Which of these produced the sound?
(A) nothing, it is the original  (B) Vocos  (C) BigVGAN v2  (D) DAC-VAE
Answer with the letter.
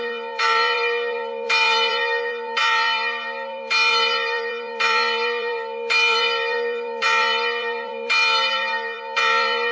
C